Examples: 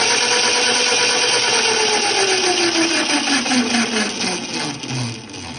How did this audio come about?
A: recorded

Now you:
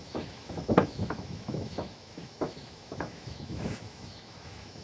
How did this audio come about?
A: remade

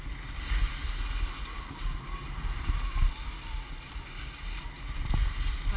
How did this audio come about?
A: recorded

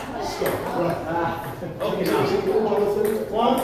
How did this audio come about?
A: recorded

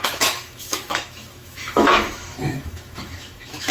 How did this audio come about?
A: remade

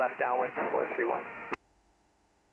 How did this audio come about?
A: remade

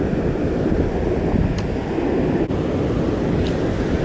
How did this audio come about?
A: recorded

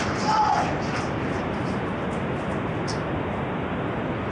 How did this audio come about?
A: recorded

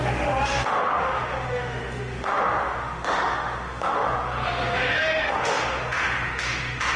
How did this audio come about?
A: remade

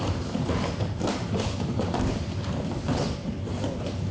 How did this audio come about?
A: recorded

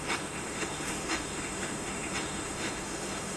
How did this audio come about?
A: remade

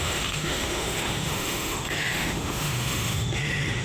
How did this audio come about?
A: remade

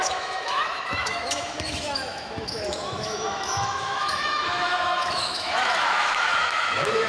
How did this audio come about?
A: remade